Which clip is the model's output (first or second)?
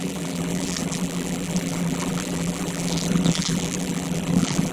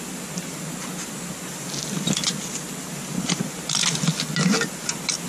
first